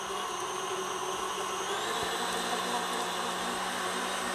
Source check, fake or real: real